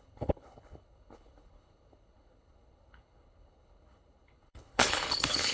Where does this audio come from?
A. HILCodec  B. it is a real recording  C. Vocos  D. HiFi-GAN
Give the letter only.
A